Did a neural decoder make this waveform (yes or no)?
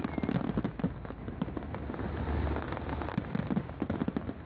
no